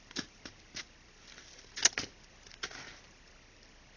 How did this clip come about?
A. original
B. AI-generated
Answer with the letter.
A